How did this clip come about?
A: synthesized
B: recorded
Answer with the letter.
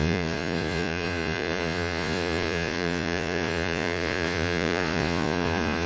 A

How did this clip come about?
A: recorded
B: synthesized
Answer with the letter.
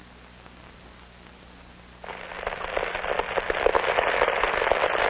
A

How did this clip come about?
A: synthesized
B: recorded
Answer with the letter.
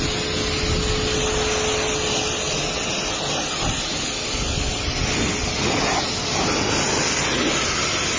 B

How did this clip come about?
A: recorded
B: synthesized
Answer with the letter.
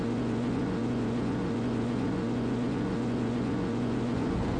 B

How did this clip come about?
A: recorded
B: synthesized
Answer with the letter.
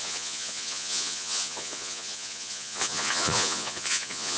B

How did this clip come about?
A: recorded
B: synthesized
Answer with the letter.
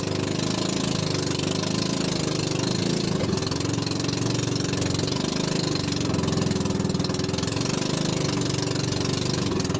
A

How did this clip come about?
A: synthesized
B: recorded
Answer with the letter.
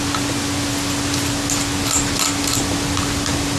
B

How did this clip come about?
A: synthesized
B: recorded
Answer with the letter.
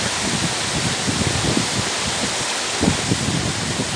B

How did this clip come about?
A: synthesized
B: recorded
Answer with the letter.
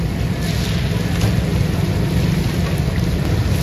B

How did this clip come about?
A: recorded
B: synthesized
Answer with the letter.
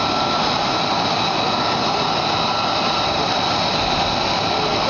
A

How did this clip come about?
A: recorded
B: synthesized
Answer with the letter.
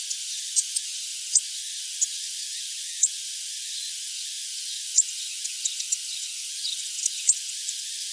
B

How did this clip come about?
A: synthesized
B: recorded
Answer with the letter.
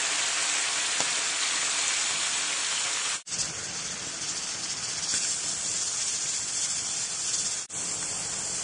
B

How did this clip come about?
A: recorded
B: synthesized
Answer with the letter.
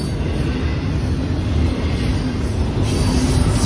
A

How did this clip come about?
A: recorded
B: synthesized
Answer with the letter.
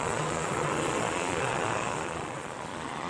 B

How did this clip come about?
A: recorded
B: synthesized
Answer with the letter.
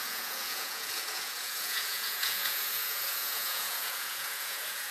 B